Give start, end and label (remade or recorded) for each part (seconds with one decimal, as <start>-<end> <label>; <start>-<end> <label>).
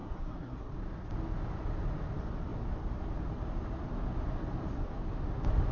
0.0-0.7 remade; 0.7-5.7 recorded